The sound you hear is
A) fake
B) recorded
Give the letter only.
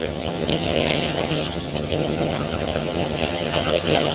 A